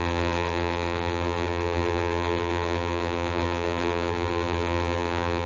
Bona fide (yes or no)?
no